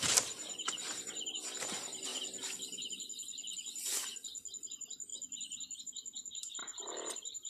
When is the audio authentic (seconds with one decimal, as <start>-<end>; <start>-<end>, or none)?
2.1-4.6; 5.1-5.8